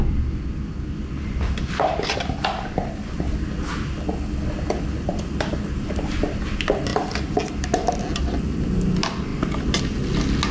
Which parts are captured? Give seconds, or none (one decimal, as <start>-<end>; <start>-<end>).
0.0-10.5